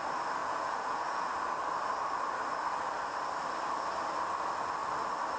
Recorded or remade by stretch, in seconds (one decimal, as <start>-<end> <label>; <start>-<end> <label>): 0.0-0.4 recorded; 0.4-1.3 remade; 1.3-5.4 recorded